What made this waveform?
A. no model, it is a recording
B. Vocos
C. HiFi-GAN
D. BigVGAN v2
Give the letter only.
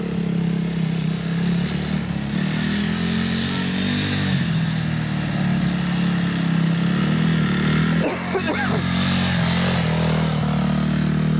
A